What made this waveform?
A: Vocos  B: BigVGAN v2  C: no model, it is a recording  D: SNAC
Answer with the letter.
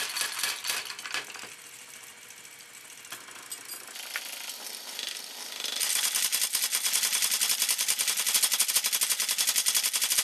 C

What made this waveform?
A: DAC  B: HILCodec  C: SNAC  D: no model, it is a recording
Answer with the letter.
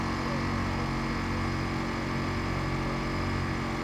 D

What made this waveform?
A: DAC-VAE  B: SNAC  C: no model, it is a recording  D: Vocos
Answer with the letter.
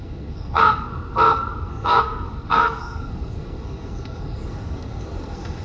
B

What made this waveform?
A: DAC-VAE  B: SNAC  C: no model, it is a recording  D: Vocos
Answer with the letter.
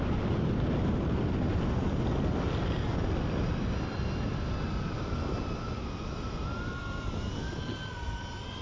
C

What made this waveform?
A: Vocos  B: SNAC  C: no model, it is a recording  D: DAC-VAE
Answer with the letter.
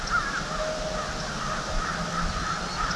C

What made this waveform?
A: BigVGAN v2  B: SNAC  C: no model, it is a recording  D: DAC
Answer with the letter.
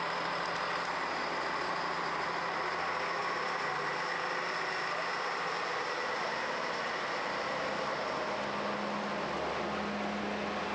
C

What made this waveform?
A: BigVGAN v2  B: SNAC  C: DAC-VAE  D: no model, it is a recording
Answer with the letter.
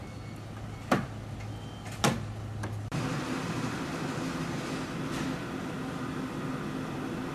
D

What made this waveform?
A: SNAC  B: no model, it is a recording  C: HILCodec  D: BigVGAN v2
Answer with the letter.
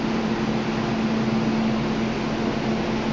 B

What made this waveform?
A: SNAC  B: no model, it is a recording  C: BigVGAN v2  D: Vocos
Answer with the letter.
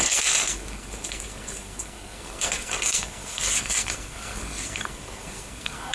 A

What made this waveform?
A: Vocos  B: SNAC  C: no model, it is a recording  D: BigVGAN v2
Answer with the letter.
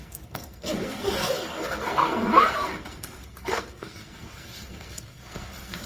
B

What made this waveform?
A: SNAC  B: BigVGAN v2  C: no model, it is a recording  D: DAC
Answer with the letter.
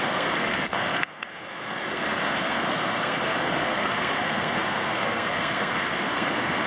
A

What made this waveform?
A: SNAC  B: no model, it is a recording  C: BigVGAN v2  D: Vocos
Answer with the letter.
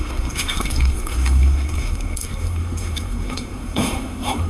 A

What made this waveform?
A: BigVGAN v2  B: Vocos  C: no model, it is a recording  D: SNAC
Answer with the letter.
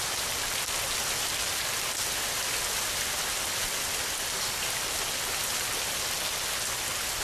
C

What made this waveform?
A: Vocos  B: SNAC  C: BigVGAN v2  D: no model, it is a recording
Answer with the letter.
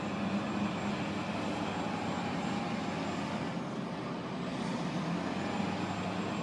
D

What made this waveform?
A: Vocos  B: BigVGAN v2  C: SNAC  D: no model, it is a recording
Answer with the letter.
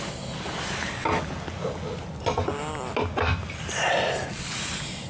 D